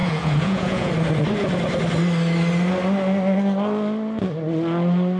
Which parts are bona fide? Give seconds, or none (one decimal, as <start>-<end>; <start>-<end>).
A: 0.9-5.2